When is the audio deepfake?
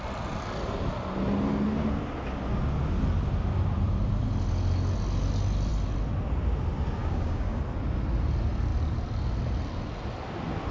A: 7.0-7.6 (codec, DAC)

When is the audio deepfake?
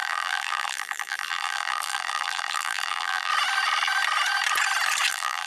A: 0.0-3.3 (vocoder, BigVGAN v2); 5.1-5.5